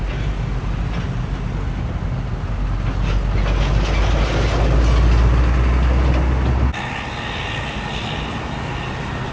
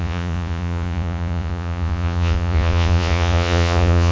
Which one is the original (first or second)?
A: first